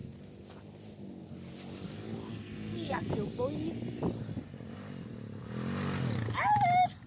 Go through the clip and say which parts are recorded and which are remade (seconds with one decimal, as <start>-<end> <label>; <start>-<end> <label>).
0.0-2.3 recorded; 2.3-3.1 remade; 3.1-7.1 recorded